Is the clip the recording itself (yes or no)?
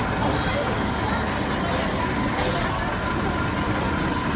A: yes